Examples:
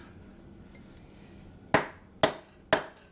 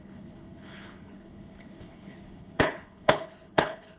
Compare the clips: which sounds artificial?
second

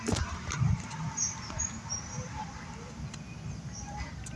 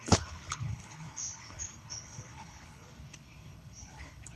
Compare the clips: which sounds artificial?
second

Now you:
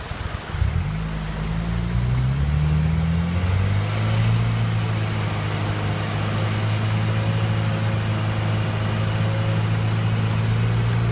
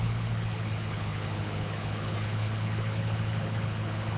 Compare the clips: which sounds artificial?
second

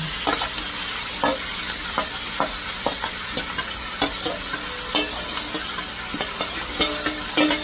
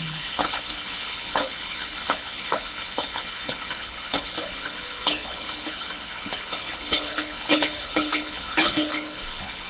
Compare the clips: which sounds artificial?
second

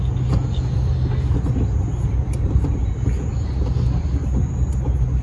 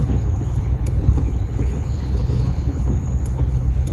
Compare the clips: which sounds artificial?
second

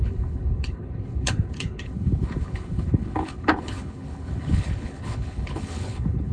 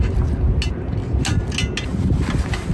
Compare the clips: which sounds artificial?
first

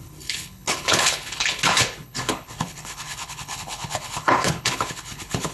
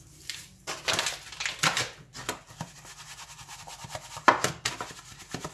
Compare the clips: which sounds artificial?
first